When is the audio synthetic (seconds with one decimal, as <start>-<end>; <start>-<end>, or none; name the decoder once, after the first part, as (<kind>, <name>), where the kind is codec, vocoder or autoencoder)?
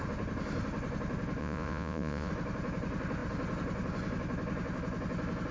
1.4-2.3 (vocoder, Vocos)